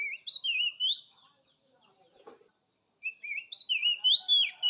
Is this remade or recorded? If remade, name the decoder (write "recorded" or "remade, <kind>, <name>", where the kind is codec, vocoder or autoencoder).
recorded